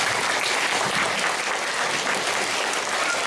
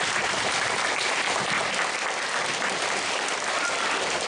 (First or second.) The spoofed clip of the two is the second